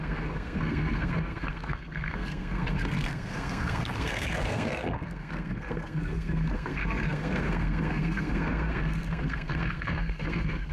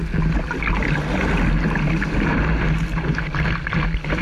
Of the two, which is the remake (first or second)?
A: first